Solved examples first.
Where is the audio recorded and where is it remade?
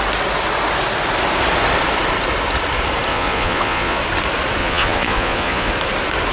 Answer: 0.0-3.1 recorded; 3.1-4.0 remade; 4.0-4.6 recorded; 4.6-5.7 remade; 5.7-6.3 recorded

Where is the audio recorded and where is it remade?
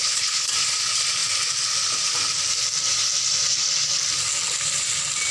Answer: 0.0-0.5 remade; 0.5-5.3 recorded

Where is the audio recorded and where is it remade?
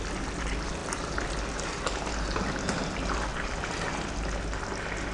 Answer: 0.0-3.3 recorded; 3.3-3.9 remade; 3.9-5.1 recorded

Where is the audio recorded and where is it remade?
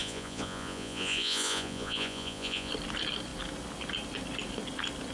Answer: 0.0-2.7 remade; 2.7-5.1 recorded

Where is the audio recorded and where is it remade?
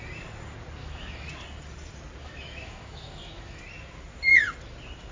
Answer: 0.0-0.8 recorded; 0.8-1.3 remade; 1.3-2.2 recorded; 2.2-3.6 remade; 3.6-5.1 recorded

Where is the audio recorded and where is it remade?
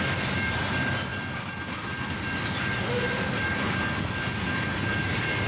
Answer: 0.0-5.5 recorded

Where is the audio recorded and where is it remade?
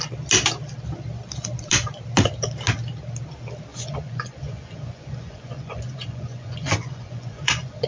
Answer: 0.0-3.7 recorded; 3.7-7.9 remade